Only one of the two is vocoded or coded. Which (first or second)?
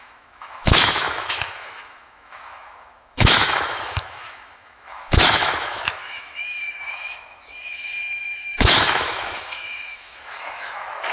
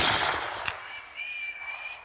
first